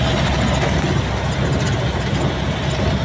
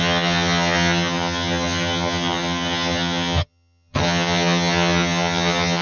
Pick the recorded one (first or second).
first